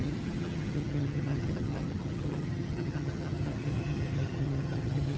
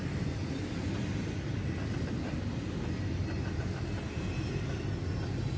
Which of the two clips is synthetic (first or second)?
first